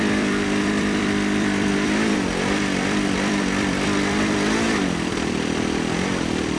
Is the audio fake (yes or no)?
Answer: yes